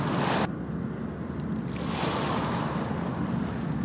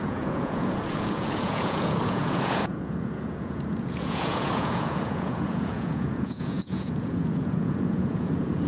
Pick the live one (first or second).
first